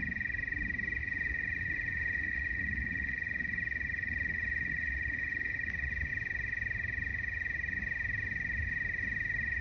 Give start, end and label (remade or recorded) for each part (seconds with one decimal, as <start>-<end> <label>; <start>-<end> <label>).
0.0-1.0 recorded; 1.0-6.1 remade; 6.1-7.1 recorded; 7.1-7.8 remade; 7.8-9.6 recorded